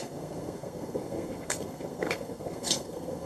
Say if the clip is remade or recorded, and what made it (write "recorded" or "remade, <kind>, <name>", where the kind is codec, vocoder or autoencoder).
remade, codec, SNAC